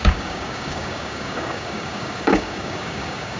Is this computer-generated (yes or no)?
yes